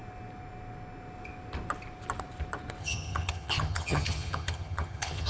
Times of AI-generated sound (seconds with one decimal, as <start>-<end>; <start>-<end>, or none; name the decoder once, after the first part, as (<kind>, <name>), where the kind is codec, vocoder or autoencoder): 2.8-5.3 (vocoder, HiFi-GAN)